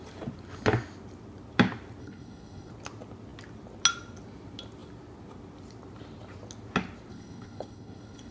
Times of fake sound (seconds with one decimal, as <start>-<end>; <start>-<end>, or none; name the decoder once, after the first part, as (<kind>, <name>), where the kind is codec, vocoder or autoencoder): 2.0-2.7 (codec, HILCodec); 7.1-8.3